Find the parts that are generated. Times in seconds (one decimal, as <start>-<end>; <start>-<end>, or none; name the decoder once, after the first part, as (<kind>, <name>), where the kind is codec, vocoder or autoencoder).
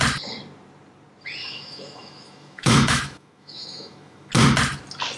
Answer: 1.4-4.3 (autoencoder, DAC-VAE)